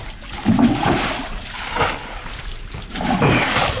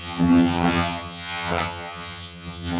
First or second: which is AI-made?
second